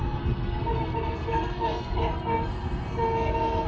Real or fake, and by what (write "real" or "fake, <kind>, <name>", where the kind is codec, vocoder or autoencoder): fake, codec, SNAC